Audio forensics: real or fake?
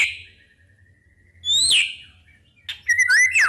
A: real